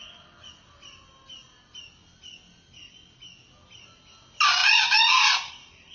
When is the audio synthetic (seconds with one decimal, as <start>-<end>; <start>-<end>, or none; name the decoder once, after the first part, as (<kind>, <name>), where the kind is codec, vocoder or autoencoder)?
none